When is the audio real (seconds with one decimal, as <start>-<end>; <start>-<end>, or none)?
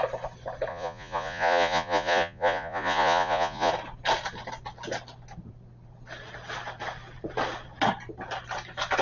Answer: 0.0-0.7; 3.7-9.0